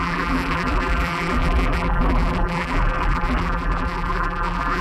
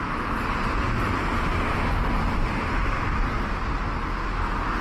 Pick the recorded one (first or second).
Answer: second